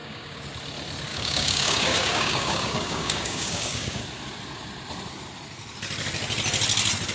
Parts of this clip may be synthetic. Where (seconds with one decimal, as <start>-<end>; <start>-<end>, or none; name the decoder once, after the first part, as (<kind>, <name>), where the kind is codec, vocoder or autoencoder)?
0.0-0.5 (codec, DAC); 1.1-4.0